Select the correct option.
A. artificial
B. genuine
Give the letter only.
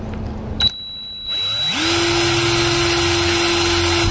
B